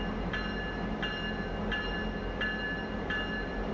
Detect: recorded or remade recorded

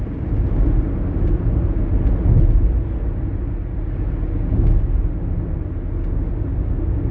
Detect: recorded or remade recorded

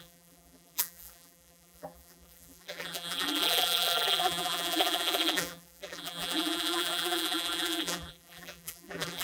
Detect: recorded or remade remade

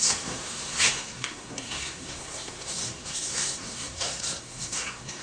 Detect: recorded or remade remade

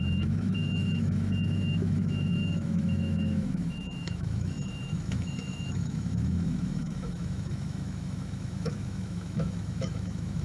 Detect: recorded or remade remade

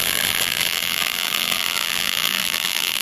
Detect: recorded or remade remade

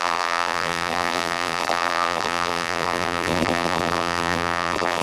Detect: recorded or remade remade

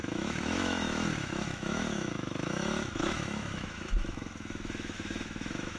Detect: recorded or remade remade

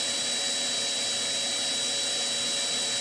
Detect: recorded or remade recorded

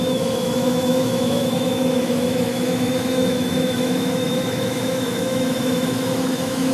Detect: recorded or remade remade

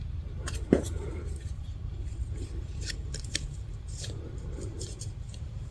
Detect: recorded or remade remade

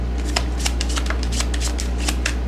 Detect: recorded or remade recorded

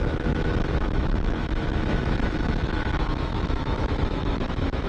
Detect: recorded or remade remade